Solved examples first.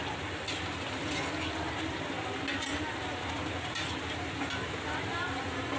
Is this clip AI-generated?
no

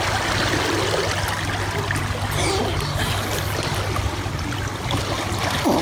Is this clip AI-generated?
no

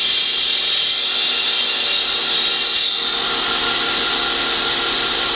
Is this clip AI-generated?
no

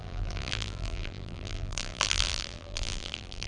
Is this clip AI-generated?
yes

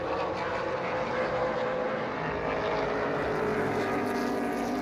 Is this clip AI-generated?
no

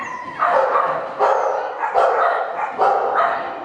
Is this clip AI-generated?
yes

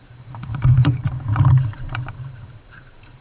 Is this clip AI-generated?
yes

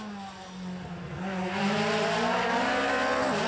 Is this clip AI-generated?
no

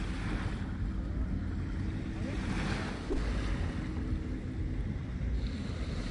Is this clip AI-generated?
no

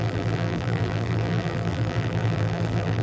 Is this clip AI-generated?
yes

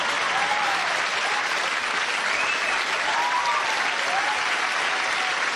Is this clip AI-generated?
yes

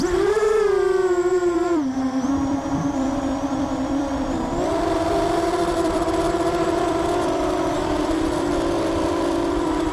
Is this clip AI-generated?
yes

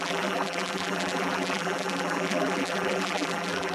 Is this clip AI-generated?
yes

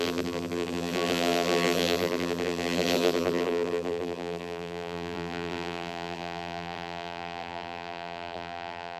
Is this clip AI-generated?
yes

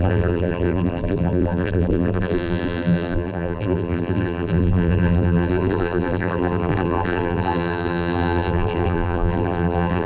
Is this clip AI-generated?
yes